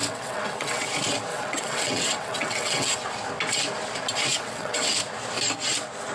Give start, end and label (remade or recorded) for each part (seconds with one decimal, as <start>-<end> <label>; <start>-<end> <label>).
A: 0.0-0.9 remade; 0.9-1.3 recorded; 1.3-2.9 remade; 2.9-4.3 recorded; 4.3-4.9 remade; 4.9-6.1 recorded